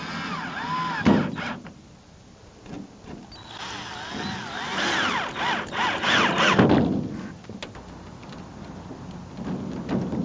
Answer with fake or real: real